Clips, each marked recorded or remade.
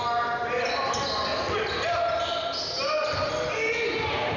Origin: recorded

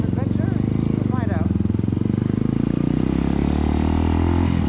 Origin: recorded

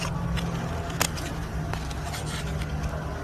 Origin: recorded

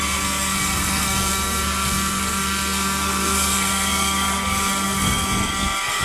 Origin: remade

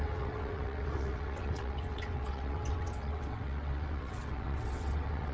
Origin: remade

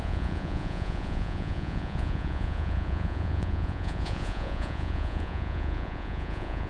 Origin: remade